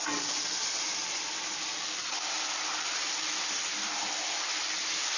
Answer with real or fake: real